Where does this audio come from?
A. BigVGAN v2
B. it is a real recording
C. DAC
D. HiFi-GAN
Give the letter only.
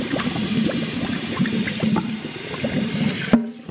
A